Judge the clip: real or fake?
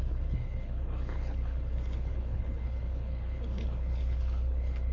fake